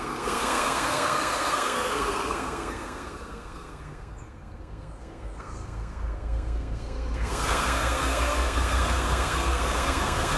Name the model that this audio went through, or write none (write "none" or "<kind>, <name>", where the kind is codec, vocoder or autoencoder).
codec, SNAC